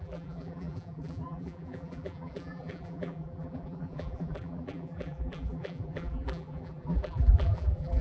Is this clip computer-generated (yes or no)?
yes